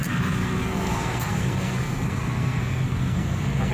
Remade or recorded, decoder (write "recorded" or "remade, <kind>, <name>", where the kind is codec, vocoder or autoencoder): remade, codec, SNAC